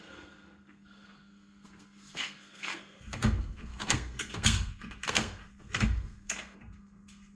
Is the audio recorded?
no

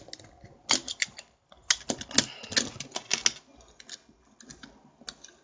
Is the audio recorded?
yes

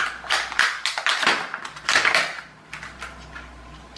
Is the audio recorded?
yes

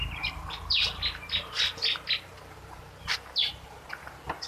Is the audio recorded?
yes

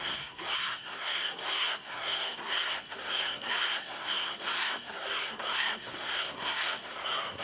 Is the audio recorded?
no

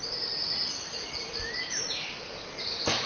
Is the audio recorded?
yes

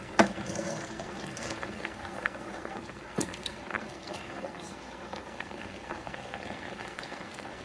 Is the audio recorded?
no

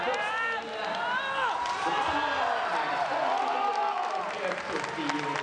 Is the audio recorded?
yes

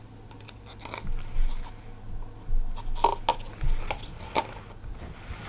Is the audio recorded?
yes